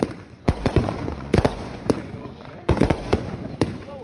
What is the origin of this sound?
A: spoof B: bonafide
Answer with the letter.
A